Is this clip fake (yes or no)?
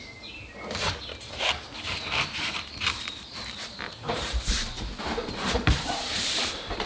yes